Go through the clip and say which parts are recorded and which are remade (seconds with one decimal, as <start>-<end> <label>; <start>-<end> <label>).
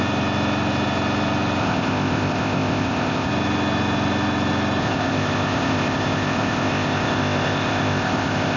0.0-1.6 recorded; 1.6-3.3 remade; 3.3-4.8 recorded; 4.8-8.6 remade